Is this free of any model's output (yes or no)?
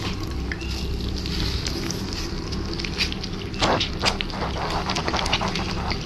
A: yes